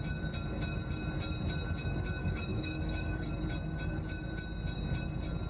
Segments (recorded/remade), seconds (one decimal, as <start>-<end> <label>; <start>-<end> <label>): 0.0-2.2 recorded; 2.2-3.3 remade; 3.3-5.5 recorded